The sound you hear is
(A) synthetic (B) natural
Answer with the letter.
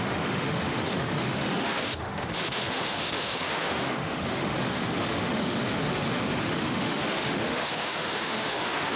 A